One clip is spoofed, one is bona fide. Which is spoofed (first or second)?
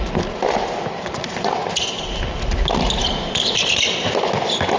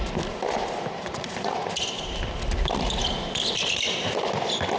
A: second